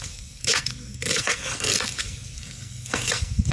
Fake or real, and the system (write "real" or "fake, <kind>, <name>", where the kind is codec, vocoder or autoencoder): fake, codec, SNAC